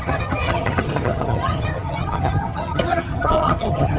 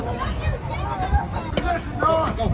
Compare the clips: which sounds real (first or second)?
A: second